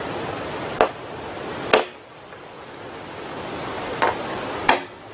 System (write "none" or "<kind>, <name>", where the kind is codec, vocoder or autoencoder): none